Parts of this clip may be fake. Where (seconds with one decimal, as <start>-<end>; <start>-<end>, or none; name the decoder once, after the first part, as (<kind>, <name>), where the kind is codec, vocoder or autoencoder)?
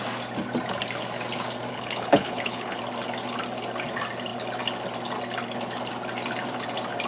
1.7-2.8 (codec, HILCodec)